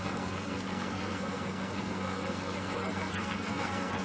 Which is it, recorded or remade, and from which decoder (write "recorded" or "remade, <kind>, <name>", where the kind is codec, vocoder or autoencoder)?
remade, codec, SNAC